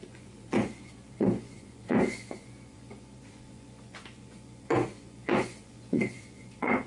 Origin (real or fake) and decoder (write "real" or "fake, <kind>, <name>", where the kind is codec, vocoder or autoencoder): fake, vocoder, Vocos